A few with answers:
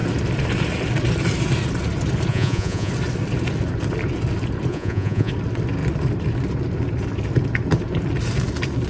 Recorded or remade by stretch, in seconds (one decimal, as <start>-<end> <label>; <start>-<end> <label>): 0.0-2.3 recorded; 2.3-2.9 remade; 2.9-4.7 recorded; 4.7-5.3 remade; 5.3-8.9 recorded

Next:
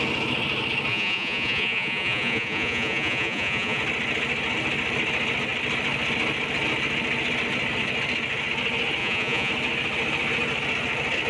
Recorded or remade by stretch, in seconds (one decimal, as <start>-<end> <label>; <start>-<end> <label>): 0.0-0.9 recorded; 0.9-3.8 remade; 3.8-9.0 recorded; 9.0-9.5 remade; 9.5-11.3 recorded

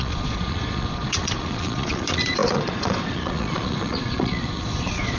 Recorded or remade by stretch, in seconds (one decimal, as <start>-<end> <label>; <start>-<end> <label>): 0.0-5.2 remade

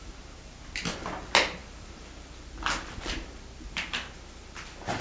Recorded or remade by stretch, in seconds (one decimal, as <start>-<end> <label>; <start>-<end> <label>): 0.0-5.0 recorded

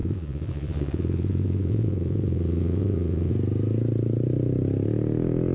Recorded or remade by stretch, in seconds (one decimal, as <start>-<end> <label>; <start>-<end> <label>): 0.0-3.3 remade; 3.3-5.5 recorded

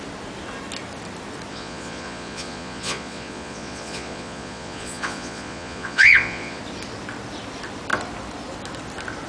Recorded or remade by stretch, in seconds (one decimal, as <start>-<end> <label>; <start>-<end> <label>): 0.0-1.5 recorded; 1.5-6.6 remade; 6.6-9.3 recorded